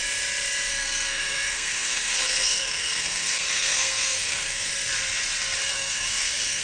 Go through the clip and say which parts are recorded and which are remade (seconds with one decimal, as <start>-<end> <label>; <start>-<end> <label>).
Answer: 0.0-0.7 recorded; 0.7-4.7 remade; 4.7-5.7 recorded; 5.7-6.6 remade